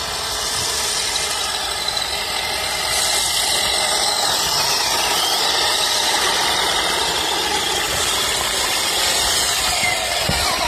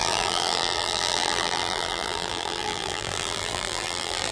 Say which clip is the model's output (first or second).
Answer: second